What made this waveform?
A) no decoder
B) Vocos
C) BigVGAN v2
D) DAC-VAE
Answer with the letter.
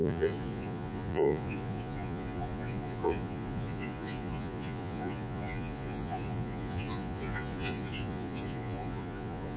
B